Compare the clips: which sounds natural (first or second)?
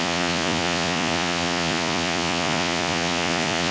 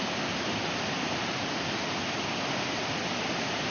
second